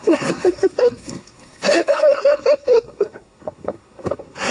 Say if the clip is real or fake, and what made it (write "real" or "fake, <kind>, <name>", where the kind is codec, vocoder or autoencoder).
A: fake, codec, SNAC